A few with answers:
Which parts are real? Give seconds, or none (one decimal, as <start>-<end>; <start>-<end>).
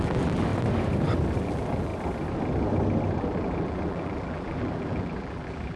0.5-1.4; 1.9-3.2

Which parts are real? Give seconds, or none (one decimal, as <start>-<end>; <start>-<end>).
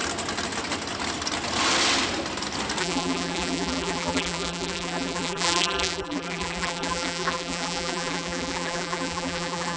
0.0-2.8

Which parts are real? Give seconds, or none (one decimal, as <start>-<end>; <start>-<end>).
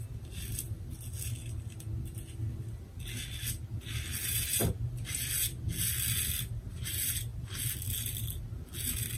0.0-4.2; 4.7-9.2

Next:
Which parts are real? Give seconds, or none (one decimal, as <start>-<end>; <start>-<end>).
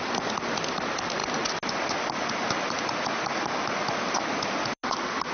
0.0-5.3